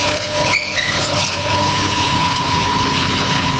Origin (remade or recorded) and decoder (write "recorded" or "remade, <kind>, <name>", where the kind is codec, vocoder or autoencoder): remade, codec, HILCodec